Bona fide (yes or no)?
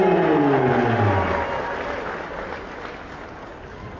yes